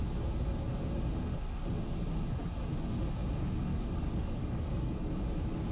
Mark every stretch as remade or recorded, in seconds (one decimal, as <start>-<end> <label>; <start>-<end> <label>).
0.0-3.7 recorded; 3.7-5.1 remade; 5.1-5.7 recorded